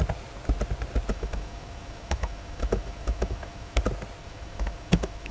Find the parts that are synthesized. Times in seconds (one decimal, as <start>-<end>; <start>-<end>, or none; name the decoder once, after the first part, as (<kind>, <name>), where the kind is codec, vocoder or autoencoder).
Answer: 1.1-3.8 (autoencoder, DAC-VAE); 4.2-5.3